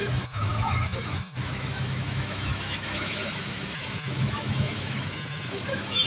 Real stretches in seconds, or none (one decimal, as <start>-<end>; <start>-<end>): none